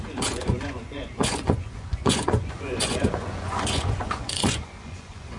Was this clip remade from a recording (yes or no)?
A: yes